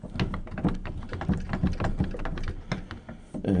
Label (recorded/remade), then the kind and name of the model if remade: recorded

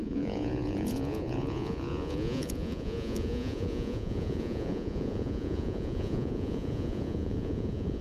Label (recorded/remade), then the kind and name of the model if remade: remade, vocoder, Vocos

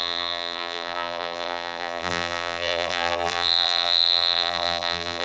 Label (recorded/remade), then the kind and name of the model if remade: remade, vocoder, BigVGAN v2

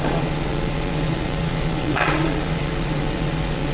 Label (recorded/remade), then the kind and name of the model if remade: remade, vocoder, Vocos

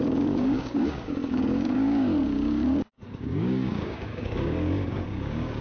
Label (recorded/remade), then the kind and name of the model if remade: remade, codec, DAC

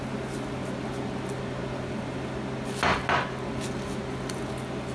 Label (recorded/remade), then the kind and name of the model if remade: recorded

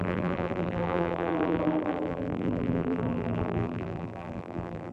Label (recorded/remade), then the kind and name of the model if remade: remade, vocoder, BigVGAN v2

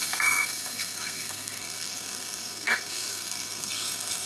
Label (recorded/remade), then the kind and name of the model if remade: remade, codec, SNAC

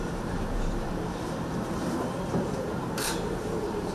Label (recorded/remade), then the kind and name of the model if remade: remade, vocoder, BigVGAN v2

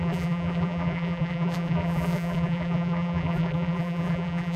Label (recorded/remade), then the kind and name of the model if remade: remade, vocoder, BigVGAN v2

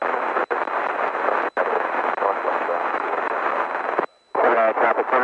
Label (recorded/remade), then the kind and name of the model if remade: recorded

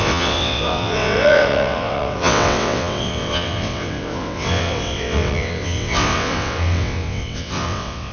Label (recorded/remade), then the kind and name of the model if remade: remade, vocoder, WaveNeXt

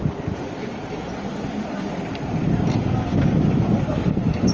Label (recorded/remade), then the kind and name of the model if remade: recorded